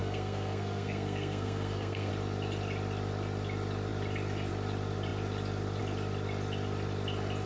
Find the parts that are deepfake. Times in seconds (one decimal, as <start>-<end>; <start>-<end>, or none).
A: 0.0-2.1